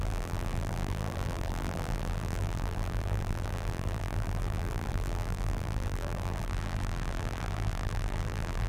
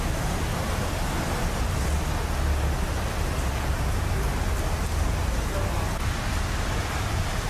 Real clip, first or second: second